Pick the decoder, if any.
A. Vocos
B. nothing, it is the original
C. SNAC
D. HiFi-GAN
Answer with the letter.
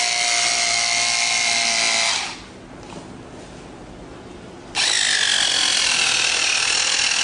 B